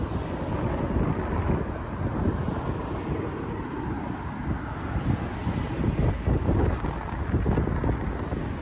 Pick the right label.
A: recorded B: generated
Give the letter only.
A